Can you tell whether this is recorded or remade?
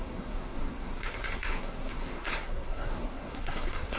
remade